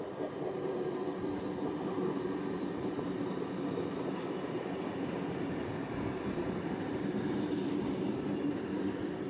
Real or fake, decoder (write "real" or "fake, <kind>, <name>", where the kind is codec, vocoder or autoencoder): real